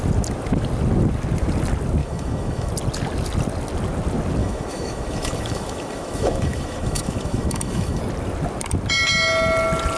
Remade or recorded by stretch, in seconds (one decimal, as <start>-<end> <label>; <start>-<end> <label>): 0.0-2.0 recorded; 2.0-2.7 remade; 2.7-4.4 recorded; 4.4-8.0 remade; 8.0-10.0 recorded